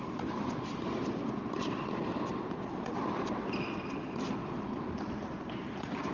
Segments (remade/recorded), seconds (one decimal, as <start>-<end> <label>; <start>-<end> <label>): 0.0-6.1 recorded

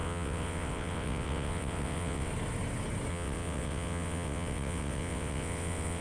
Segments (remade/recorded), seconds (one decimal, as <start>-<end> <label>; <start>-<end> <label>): 0.0-2.3 remade; 2.3-3.1 recorded; 3.1-6.0 remade

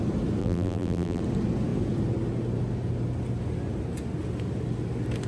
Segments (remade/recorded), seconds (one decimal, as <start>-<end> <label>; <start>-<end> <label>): 0.0-0.4 recorded; 0.4-1.2 remade; 1.2-5.3 recorded

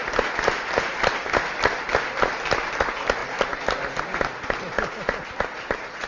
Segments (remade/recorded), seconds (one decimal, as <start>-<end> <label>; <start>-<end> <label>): 0.0-2.7 remade; 2.7-3.2 recorded; 3.2-4.0 remade; 4.0-6.1 recorded

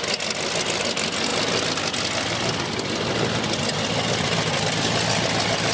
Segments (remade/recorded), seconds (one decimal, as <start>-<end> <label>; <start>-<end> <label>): 0.0-5.7 recorded

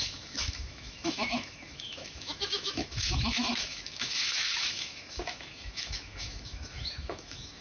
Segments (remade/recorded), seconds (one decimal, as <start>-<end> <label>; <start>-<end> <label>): 0.0-7.6 remade

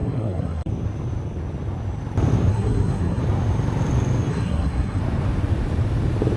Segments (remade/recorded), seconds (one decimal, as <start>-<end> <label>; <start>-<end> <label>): 0.0-0.7 remade; 0.7-2.5 recorded; 2.5-3.2 remade; 3.2-4.3 recorded; 4.3-5.0 remade; 5.0-6.4 recorded